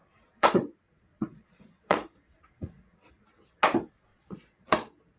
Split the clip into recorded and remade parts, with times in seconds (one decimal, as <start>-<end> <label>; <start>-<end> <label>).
0.0-3.1 remade; 3.1-4.1 recorded; 4.1-5.2 remade